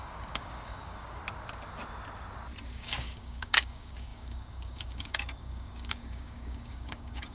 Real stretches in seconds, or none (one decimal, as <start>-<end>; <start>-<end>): 1.2-2.7